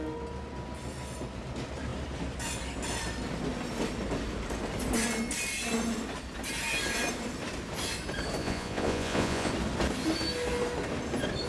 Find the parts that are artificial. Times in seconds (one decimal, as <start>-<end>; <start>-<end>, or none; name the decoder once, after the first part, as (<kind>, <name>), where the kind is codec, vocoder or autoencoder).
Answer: 8.4-9.5 (vocoder, Vocos)